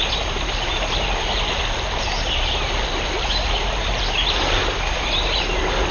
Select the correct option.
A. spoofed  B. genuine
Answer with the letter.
B